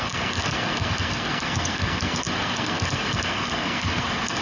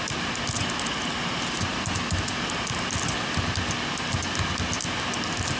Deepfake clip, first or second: first